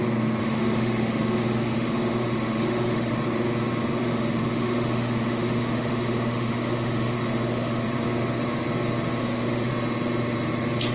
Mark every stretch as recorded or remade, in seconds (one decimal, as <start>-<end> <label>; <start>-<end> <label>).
0.0-0.4 recorded; 0.4-3.1 remade; 3.1-4.0 recorded; 4.0-7.8 remade; 7.8-9.2 recorded; 9.2-9.7 remade; 9.7-10.9 recorded